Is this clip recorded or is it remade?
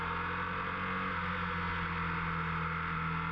recorded